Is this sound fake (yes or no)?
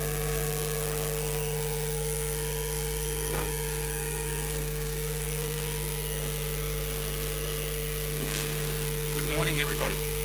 yes